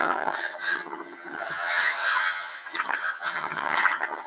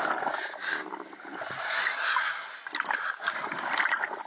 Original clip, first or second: second